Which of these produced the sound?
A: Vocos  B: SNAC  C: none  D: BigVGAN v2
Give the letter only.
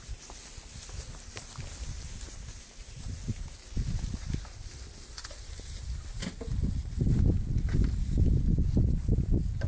C